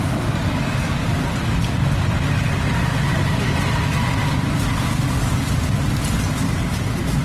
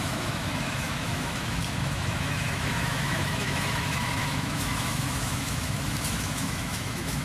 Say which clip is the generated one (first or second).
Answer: second